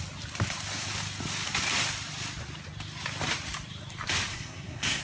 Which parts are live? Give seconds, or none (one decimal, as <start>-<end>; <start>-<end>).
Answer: 0.0-4.3